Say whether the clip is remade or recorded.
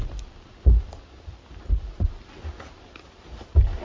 recorded